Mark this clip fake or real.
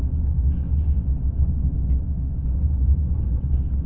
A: real